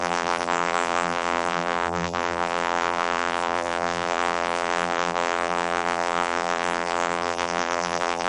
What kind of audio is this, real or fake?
fake